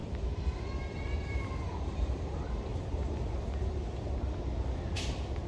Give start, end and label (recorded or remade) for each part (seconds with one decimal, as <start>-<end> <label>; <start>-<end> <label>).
0.0-2.7 remade; 2.7-4.8 recorded; 4.8-5.5 remade